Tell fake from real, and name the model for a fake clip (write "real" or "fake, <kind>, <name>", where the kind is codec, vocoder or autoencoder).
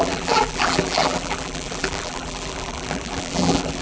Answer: fake, vocoder, BigVGAN v2